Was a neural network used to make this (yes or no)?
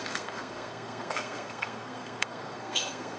yes